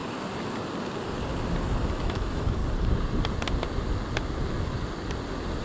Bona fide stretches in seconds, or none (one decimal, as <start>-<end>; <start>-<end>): 0.0-1.9; 2.6-5.6